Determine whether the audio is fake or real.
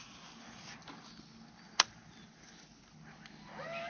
real